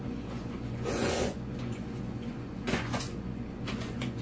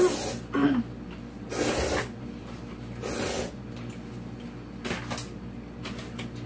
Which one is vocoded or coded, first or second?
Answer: first